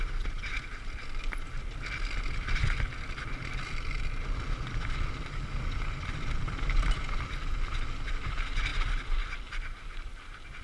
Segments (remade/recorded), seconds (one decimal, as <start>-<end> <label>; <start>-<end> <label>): 0.0-10.6 recorded